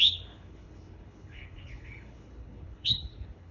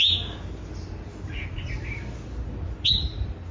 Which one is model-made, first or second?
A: first